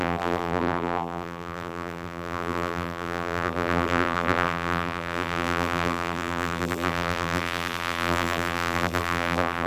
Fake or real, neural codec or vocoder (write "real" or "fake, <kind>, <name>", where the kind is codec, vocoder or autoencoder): fake, vocoder, BigVGAN v2